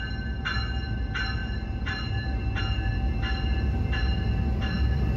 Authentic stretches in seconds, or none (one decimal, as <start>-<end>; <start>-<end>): 0.0-1.4; 2.6-5.2